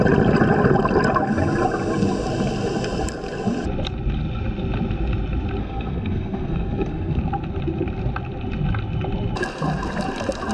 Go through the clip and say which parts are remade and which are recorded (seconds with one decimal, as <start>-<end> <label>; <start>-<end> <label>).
0.0-5.6 recorded; 5.6-7.2 remade; 7.2-10.5 recorded